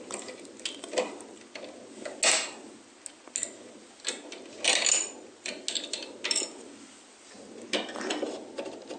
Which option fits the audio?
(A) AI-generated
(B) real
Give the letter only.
B